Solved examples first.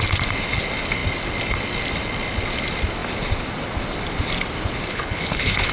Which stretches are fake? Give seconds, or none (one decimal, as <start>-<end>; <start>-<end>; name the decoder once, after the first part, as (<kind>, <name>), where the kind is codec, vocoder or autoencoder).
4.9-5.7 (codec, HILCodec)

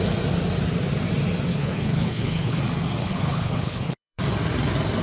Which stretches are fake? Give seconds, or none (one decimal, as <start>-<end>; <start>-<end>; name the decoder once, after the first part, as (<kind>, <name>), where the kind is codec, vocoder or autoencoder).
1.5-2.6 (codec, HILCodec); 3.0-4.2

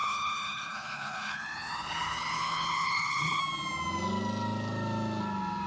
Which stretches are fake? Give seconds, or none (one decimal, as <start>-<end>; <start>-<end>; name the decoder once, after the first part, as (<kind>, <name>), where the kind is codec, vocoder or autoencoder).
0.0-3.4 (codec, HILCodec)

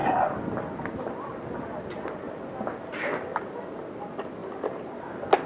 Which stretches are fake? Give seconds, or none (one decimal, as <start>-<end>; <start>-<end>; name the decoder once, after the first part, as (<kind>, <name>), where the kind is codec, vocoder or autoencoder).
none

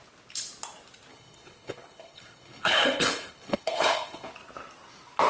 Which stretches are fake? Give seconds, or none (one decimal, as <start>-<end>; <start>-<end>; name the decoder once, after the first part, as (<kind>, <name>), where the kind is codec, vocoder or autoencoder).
1.1-4.3 (codec, HILCodec)